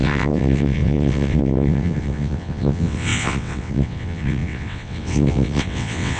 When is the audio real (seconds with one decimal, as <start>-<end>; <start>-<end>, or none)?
none